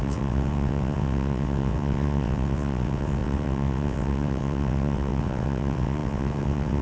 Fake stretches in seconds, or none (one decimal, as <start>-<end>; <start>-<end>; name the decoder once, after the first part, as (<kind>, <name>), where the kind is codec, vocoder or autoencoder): 0.0-6.8 (vocoder, WaveNeXt)